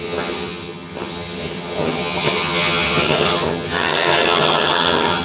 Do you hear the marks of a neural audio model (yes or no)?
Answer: yes